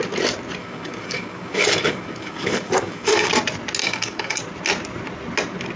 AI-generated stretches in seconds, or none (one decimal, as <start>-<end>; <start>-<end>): 0.6-3.3; 3.8-4.4